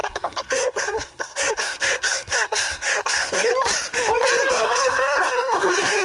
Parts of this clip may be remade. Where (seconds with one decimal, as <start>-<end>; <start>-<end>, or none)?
0.0-3.5; 4.5-6.0